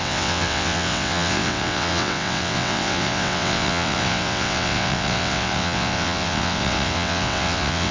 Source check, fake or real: fake